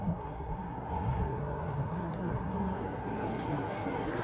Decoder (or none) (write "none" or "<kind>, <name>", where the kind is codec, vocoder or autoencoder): codec, SNAC